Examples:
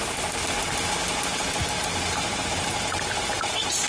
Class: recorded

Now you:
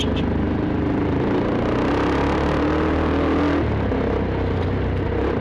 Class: recorded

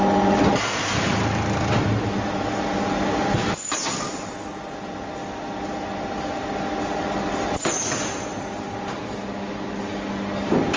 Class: recorded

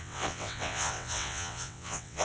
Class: remade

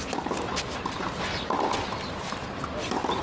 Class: recorded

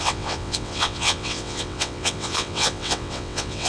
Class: remade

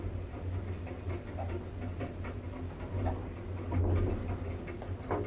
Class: recorded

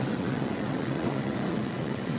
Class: remade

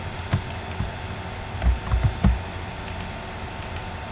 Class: recorded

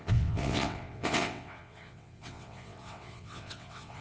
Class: remade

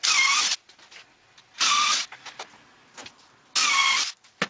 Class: recorded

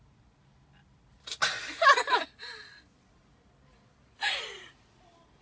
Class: recorded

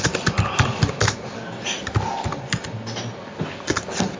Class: recorded